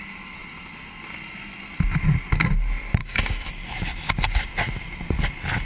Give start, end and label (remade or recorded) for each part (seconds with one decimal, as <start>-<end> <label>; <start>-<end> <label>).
0.0-3.0 recorded; 3.0-3.5 remade; 3.5-5.7 recorded